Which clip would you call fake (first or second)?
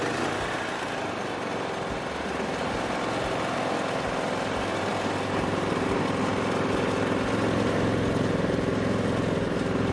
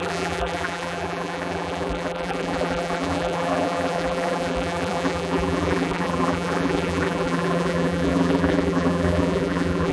second